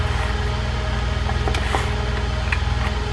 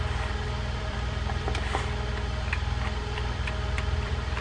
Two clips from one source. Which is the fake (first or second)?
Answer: second